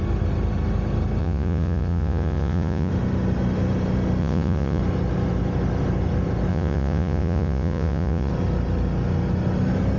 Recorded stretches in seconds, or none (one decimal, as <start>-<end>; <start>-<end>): 0.0-1.2; 2.9-4.2; 4.8-6.5; 8.3-10.0